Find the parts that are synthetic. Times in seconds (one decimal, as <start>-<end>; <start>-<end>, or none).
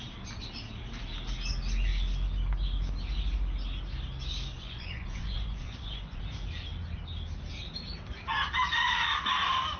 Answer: 4.5-6.2